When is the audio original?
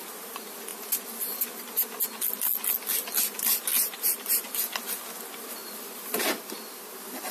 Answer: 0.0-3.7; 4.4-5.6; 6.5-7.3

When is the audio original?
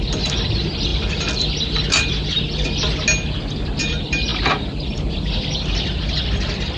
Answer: 0.0-6.8